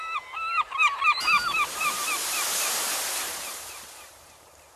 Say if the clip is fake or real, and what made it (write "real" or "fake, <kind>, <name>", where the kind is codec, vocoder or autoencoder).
fake, vocoder, BigVGAN v2